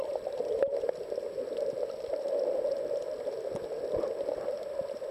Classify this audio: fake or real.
real